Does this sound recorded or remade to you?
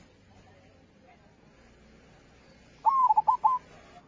recorded